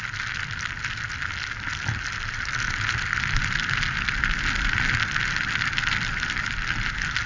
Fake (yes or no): no